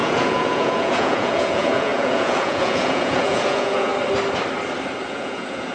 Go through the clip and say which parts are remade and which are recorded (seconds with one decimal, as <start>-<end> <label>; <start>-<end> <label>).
0.0-3.9 remade; 3.9-5.1 recorded; 5.1-5.7 remade